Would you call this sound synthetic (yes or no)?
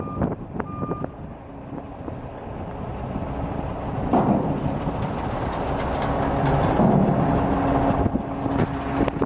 no